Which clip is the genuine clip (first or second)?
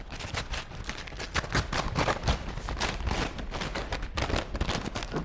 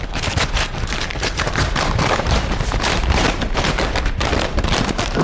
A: first